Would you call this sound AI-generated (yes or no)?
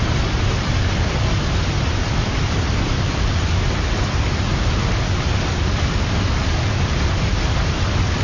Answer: no